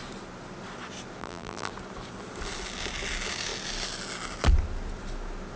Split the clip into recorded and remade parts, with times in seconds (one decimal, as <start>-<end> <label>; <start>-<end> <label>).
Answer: 0.0-1.2 recorded; 1.2-1.7 remade; 1.7-5.6 recorded

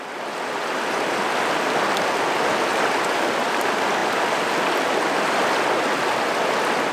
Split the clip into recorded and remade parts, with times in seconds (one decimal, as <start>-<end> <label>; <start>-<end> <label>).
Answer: 0.0-2.7 recorded; 2.7-3.5 remade; 3.5-6.9 recorded

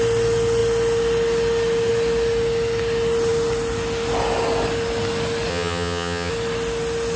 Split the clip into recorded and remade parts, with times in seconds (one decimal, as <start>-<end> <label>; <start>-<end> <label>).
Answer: 0.0-5.5 recorded; 5.5-6.3 remade; 6.3-7.2 recorded

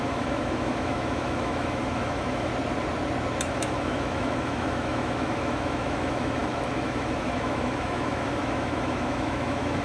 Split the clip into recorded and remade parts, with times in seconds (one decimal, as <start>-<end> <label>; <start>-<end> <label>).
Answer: 0.0-2.5 remade; 2.5-3.5 recorded; 3.5-9.8 remade

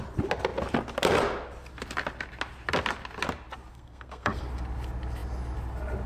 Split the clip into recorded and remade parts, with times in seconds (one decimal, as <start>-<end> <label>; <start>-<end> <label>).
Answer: 0.0-3.7 recorded; 3.7-4.4 remade; 4.4-6.1 recorded

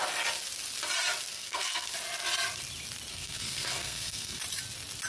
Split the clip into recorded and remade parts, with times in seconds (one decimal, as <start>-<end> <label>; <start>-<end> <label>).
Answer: 0.0-1.3 recorded; 1.3-1.9 remade; 1.9-3.1 recorded; 3.1-4.4 remade; 4.4-5.1 recorded

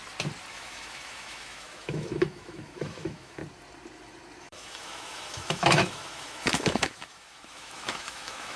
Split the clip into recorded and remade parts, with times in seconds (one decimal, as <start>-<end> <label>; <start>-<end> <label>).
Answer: 0.0-0.5 recorded; 0.5-3.4 remade; 3.4-4.4 recorded; 4.4-8.6 remade

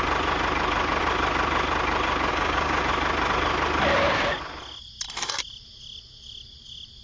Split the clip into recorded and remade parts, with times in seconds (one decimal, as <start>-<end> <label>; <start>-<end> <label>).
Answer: 0.0-2.3 recorded; 2.3-2.8 remade; 2.8-7.0 recorded